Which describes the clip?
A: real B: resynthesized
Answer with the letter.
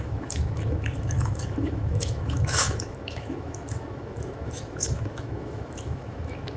B